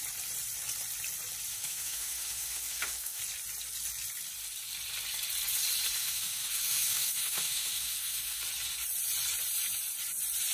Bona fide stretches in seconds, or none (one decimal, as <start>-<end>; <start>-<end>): 0.0-1.5; 3.2-6.0; 8.4-10.5

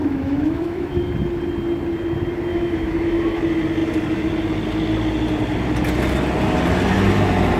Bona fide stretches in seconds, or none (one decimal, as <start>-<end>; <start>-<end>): 1.1-2.5; 3.4-7.6